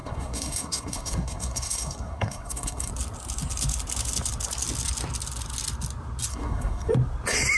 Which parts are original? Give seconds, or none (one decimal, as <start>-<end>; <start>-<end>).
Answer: 2.9-6.3; 6.9-7.6